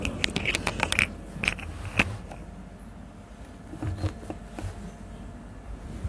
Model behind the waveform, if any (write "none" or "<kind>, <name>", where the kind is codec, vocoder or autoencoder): none